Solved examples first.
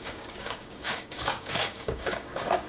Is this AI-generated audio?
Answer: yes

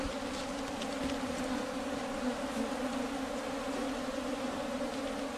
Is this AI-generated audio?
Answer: no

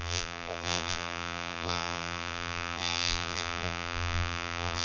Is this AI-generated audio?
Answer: yes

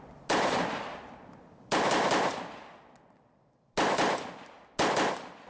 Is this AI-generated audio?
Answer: no